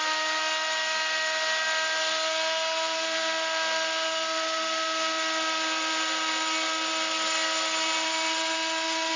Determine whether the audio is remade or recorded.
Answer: recorded